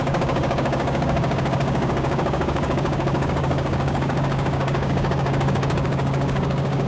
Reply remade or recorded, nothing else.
remade